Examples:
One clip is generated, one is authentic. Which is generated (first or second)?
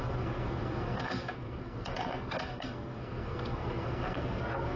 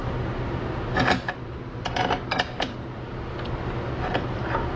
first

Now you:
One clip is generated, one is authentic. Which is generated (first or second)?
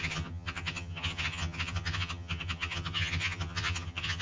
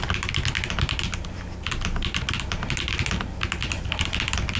first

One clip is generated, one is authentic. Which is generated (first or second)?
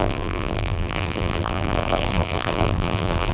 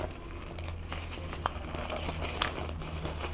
first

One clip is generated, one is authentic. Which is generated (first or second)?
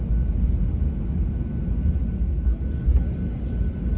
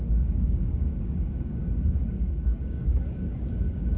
second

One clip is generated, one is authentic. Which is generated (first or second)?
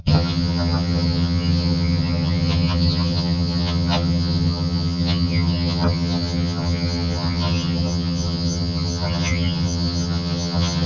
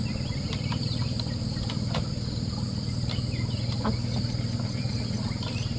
first